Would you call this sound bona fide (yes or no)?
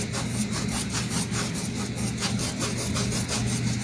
yes